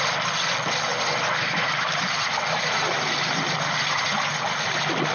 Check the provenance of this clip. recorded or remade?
recorded